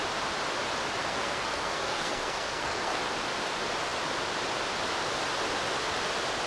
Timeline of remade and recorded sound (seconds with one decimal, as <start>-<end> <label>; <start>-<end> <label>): 0.0-1.0 recorded; 1.0-3.0 remade; 3.0-6.5 recorded